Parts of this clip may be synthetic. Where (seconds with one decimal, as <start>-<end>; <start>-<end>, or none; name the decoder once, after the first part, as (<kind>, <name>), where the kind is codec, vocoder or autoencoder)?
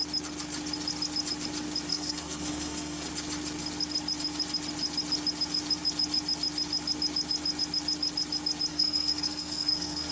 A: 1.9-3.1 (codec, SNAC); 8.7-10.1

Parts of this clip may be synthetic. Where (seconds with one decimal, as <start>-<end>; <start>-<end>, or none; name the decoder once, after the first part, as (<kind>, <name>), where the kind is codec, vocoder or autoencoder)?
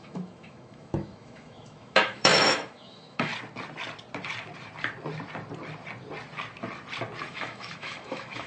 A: 0.0-3.3 (autoencoder, DAC-VAE); 7.3-8.5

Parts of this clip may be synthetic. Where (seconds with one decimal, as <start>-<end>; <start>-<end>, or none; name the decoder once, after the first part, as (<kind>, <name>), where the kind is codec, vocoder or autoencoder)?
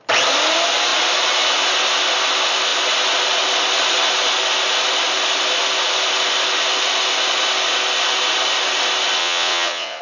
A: 9.2-10.0 (vocoder, WaveNeXt)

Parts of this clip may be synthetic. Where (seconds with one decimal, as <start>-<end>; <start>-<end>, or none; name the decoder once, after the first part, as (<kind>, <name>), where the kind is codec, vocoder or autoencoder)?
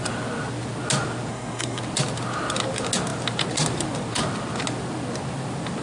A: 1.3-1.8 (codec, SNAC)